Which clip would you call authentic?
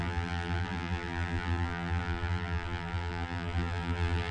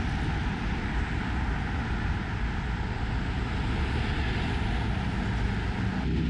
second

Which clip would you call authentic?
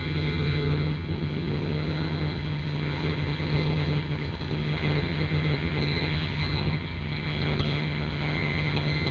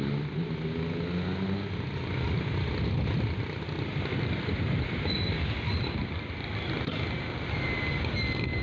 second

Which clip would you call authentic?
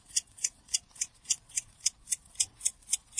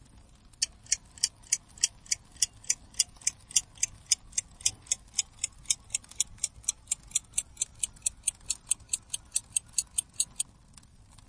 second